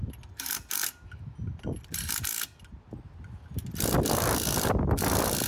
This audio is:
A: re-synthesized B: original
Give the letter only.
B